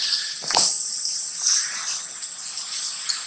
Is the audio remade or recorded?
recorded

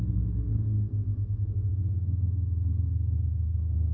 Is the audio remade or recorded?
remade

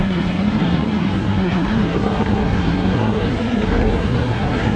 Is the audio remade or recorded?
remade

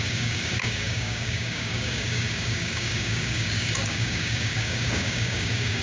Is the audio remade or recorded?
remade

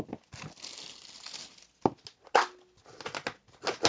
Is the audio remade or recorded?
recorded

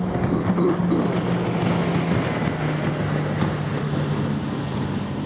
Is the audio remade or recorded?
recorded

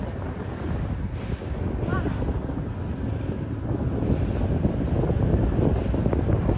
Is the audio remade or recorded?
recorded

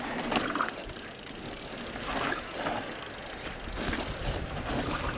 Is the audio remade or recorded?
recorded